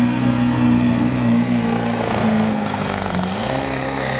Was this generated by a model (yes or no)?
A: yes